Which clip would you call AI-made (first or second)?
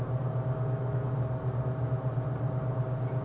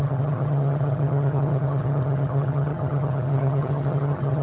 second